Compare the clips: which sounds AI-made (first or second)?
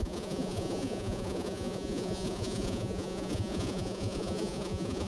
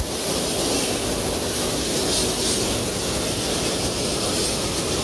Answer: first